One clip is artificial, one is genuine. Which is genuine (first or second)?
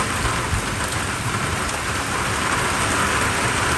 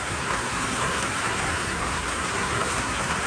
first